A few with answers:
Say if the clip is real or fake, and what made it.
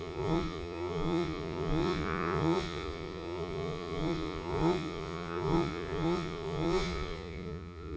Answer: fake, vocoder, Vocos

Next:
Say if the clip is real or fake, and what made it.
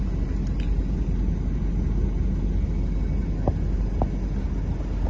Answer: real